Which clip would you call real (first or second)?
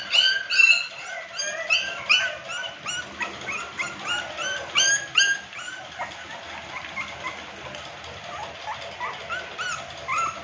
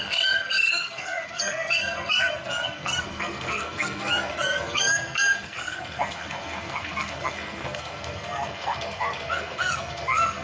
first